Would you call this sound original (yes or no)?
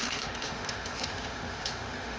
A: no